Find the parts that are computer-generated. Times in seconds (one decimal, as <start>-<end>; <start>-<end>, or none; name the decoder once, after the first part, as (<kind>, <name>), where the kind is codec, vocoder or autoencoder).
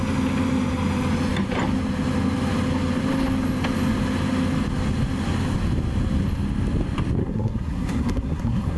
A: 7.2-8.8 (codec, SNAC)